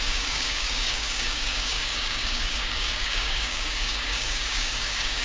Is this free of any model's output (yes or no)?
no